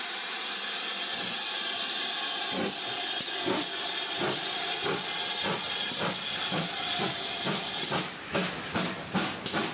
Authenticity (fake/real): real